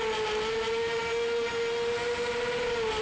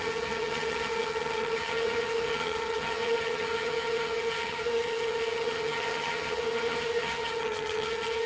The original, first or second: first